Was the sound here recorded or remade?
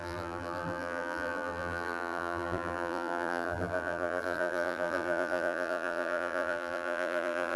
remade